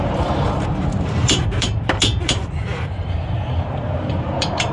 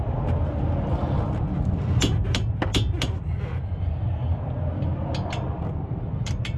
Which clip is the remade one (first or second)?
first